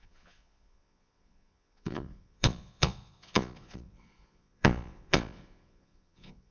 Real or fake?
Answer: fake